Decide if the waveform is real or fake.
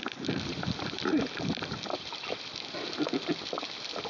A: fake